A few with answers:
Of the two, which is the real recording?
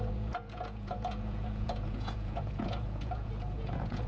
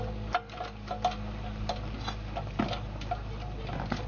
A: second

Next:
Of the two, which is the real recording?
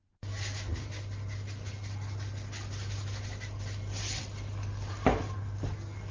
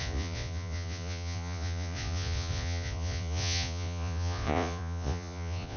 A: first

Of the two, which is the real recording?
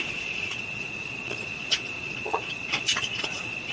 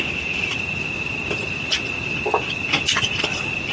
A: second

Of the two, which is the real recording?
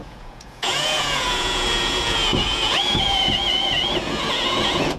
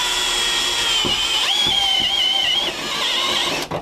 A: second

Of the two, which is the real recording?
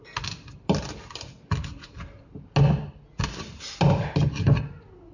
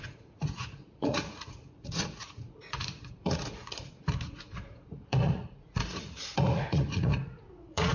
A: first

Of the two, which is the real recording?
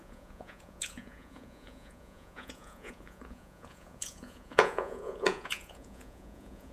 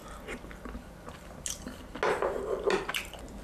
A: second